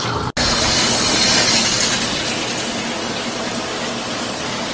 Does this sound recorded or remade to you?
recorded